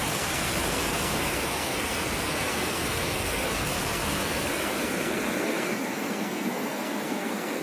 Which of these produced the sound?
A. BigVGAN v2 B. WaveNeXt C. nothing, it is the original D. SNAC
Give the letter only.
D